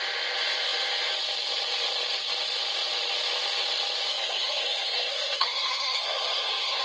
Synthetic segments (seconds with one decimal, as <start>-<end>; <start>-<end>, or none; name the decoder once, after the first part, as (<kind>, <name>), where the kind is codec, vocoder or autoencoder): 4.1-6.8 (codec, SNAC)